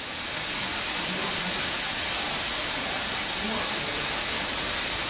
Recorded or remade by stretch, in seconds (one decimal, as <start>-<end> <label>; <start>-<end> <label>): 0.0-1.2 recorded; 1.2-3.4 remade; 3.4-5.1 recorded

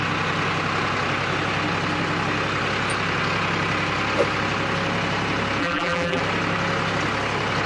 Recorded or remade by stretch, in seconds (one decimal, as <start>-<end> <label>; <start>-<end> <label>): 0.0-5.6 recorded; 5.6-6.2 remade; 6.2-7.7 recorded

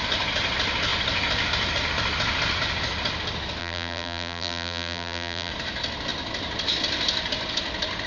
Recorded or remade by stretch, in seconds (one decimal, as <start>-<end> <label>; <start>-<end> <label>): 0.0-3.6 recorded; 3.6-5.5 remade; 5.5-8.1 recorded

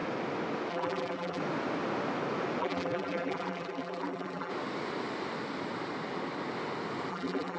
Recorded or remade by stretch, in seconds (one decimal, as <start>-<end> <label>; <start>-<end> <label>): 0.0-0.7 recorded; 0.7-1.4 remade; 1.4-2.6 recorded; 2.6-4.5 remade; 4.5-7.1 recorded; 7.1-7.6 remade

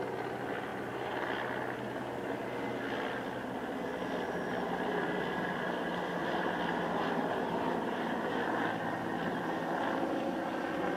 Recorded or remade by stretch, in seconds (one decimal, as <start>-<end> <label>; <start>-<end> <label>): 0.0-6.2 recorded; 6.2-8.1 remade; 8.1-11.0 recorded

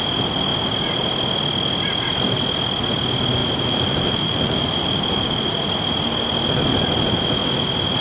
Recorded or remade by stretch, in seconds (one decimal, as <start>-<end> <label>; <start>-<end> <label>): 0.0-3.4 recorded; 3.4-5.5 remade; 5.5-8.0 recorded

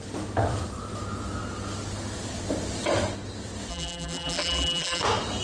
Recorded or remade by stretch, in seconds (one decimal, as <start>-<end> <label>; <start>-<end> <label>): 0.0-3.7 recorded; 3.7-5.0 remade; 5.0-5.4 recorded

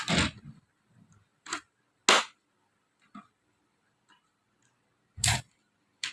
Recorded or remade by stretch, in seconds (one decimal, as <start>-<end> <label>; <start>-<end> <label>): 0.0-1.3 recorded; 1.3-1.9 remade; 1.9-2.4 recorded; 2.4-6.1 remade